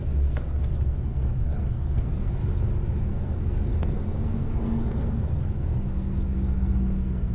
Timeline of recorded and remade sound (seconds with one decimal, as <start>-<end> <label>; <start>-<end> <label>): 0.0-2.4 remade; 2.4-3.0 recorded; 3.0-7.3 remade